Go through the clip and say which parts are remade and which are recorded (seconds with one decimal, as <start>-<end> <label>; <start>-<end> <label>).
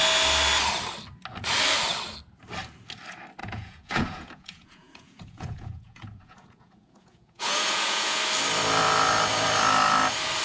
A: 0.0-3.4 recorded; 3.4-8.2 remade; 8.2-10.4 recorded